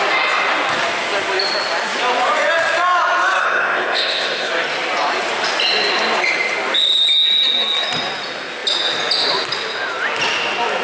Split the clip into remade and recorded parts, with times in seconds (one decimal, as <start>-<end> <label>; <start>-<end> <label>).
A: 0.0-3.4 recorded; 3.4-4.5 remade; 4.5-10.8 recorded